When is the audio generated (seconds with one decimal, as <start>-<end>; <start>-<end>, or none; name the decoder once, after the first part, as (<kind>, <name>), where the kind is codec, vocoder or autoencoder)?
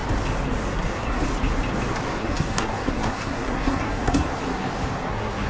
0.7-1.2 (codec, SNAC); 2.2-4.3; 5.1-5.5